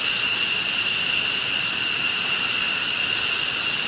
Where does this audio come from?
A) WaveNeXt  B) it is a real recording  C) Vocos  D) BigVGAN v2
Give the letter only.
B